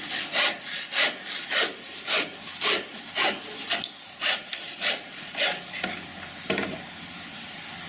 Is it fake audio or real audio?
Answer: real